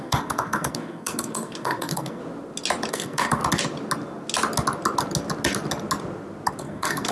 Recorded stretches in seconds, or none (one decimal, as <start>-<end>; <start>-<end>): 2.2-2.9; 3.4-6.6